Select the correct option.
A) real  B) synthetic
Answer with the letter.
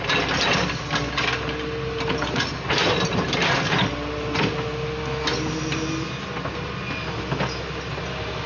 A